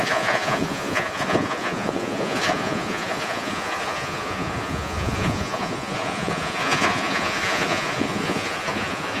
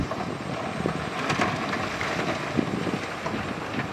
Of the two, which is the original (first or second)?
second